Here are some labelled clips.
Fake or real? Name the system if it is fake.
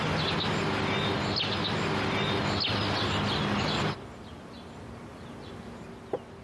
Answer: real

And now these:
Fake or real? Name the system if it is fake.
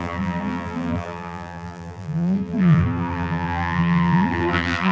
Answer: fake, vocoder, BigVGAN v2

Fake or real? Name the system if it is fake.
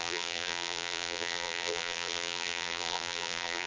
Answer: fake, vocoder, BigVGAN v2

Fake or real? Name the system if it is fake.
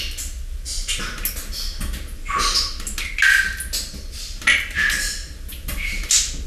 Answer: real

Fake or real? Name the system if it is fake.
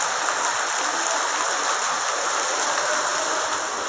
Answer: real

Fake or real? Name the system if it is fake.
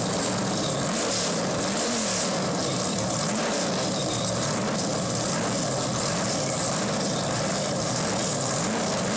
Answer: fake, vocoder, BigVGAN v2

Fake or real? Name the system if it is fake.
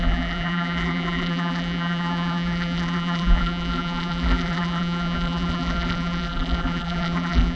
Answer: fake, vocoder, BigVGAN v2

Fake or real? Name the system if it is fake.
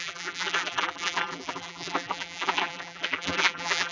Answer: fake, vocoder, BigVGAN v2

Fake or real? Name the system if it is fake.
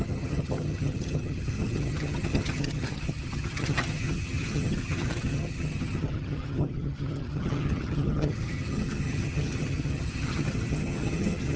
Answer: fake, vocoder, HiFi-GAN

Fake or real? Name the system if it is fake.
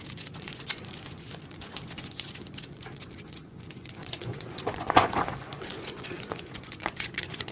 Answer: fake, vocoder, Vocos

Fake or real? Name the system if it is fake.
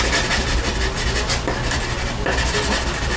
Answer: real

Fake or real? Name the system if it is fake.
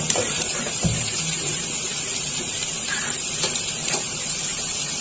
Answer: fake, vocoder, BigVGAN v2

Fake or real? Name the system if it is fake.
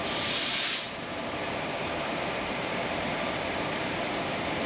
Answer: fake, vocoder, BigVGAN v2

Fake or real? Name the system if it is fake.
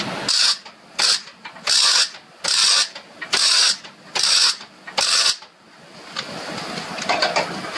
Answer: real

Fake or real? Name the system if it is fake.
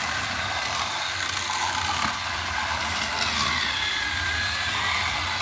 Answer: real